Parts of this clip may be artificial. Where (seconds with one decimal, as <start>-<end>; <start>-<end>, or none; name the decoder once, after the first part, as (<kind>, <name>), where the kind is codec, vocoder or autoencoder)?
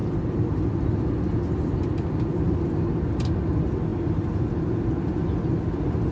none